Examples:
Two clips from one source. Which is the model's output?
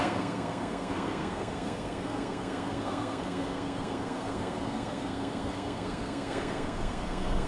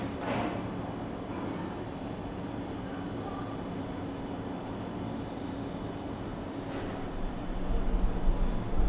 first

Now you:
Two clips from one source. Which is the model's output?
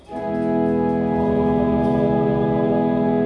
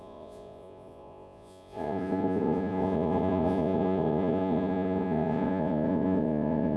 second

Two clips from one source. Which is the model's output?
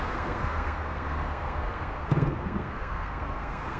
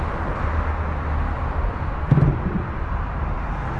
first